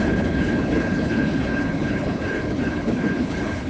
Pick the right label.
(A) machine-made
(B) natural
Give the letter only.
A